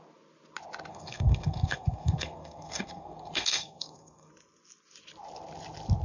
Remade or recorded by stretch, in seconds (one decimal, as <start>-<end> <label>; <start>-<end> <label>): 0.0-0.9 recorded; 0.9-4.3 remade; 4.3-6.0 recorded